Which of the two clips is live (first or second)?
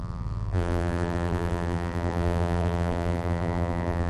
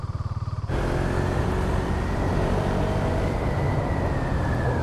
second